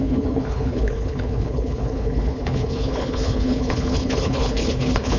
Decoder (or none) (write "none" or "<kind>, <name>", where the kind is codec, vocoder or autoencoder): codec, HILCodec